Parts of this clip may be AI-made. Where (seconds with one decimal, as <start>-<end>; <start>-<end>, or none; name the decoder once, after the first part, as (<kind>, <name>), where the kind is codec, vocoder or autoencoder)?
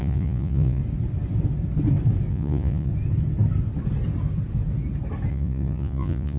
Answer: 0.0-0.8 (vocoder, Vocos); 2.3-2.9; 5.3-6.4